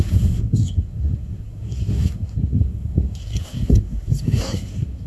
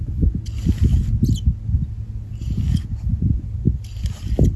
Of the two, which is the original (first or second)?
second